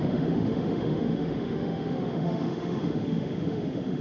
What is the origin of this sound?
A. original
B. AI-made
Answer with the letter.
B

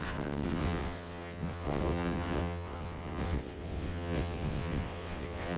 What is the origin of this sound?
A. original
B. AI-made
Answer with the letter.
B